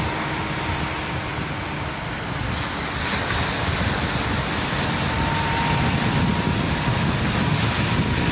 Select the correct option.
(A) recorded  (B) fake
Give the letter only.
A